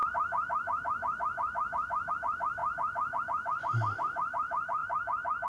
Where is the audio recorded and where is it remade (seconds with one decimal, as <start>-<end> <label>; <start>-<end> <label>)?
0.0-2.1 recorded; 2.1-2.6 remade; 2.6-3.2 recorded; 3.2-5.5 remade